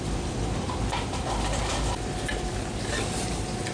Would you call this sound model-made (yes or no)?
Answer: yes